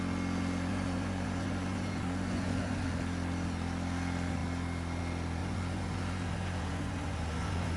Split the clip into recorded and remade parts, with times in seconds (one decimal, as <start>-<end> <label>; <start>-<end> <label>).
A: 0.0-0.7 recorded; 0.7-2.8 remade; 2.8-5.4 recorded; 5.4-7.8 remade